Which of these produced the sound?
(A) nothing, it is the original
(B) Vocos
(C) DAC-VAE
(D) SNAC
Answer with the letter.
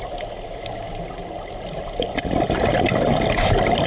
A